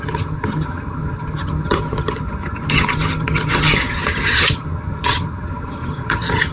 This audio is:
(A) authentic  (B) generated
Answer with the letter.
B